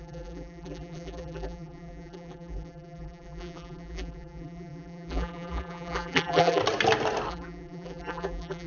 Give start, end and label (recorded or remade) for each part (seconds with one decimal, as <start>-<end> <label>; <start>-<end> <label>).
0.0-6.6 remade; 6.6-7.3 recorded; 7.3-8.7 remade